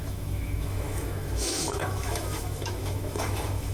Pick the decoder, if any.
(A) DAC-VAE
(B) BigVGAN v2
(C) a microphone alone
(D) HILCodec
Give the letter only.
A